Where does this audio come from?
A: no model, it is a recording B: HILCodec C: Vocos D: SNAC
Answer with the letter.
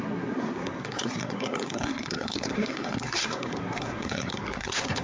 D